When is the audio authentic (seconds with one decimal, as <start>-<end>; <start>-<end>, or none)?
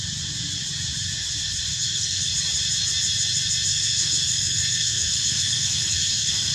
0.0-1.7; 2.3-3.7